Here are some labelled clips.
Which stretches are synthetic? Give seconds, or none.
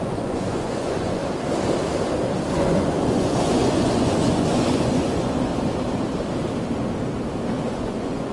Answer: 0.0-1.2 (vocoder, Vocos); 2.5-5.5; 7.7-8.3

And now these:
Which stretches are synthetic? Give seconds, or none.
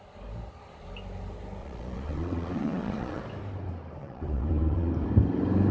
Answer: 1.6-3.2 (vocoder, Vocos); 4.0-4.9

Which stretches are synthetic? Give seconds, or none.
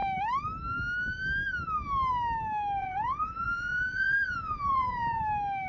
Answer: 2.8-5.2 (vocoder, Vocos)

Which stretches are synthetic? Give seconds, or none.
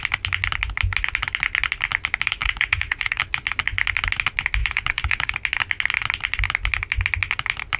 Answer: 2.4-3.2 (vocoder, Vocos); 4.6-5.3